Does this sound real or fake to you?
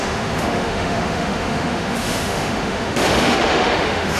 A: fake